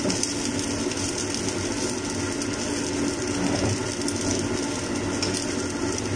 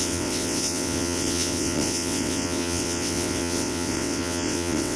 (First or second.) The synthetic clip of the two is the second